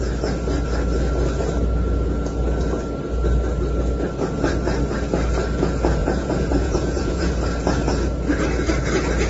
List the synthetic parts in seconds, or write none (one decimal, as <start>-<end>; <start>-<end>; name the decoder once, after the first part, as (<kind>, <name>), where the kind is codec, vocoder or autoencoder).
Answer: 6.0-7.3 (vocoder, Vocos)